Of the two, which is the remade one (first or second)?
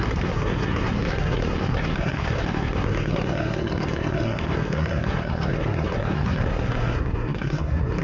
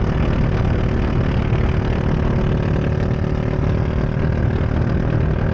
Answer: first